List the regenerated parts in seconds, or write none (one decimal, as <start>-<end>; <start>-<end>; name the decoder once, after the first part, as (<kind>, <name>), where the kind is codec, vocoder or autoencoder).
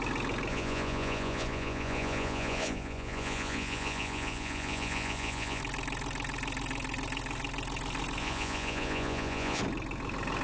0.5-5.6 (vocoder, Vocos); 8.2-9.6